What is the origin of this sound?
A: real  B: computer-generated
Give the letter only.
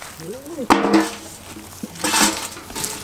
A